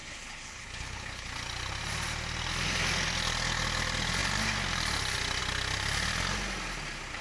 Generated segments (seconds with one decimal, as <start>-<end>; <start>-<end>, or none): 0.0-1.3